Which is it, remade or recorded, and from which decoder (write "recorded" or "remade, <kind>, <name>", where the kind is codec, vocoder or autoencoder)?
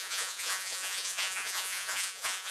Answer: remade, vocoder, Vocos